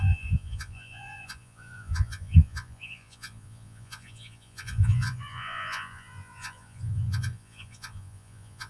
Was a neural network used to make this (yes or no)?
yes